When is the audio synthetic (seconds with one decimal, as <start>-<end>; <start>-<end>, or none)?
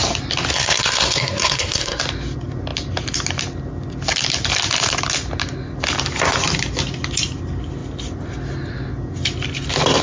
0.5-2.0